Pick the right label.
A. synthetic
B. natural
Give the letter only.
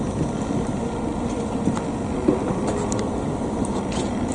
B